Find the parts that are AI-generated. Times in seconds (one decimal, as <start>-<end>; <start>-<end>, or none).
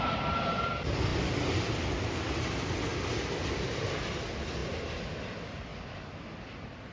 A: none